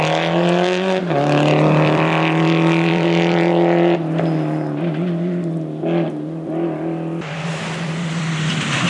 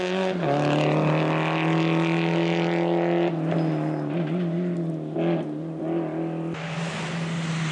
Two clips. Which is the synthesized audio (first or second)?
first